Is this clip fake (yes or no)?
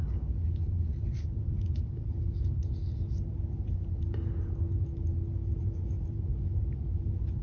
no